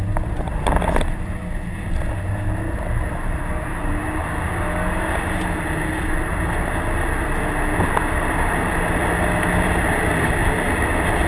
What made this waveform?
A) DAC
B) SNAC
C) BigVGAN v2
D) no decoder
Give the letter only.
D